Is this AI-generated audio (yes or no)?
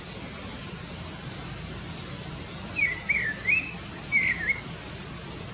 no